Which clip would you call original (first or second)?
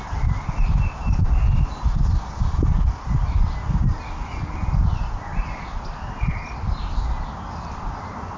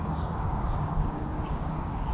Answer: first